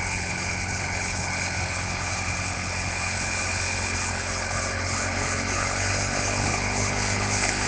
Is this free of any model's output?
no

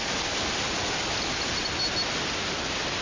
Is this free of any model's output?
yes